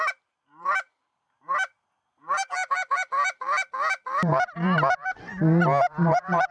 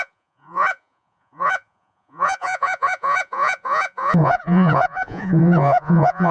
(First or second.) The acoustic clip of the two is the first